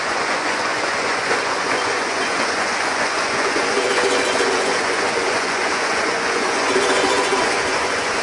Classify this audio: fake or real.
fake